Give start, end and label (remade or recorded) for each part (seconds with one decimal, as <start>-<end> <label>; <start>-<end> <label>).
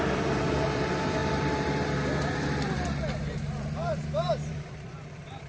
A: 0.0-5.5 remade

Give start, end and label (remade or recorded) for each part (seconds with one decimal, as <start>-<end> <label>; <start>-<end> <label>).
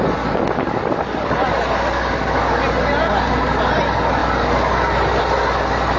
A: 0.0-6.0 recorded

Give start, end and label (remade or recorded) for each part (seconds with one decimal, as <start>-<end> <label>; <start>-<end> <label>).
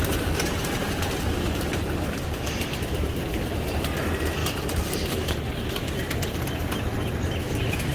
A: 0.0-7.9 recorded